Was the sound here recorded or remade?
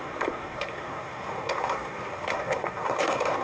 remade